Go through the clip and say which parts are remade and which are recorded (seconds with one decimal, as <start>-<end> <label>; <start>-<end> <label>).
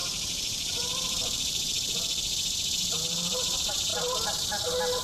0.0-3.9 remade; 3.9-4.4 recorded; 4.4-5.0 remade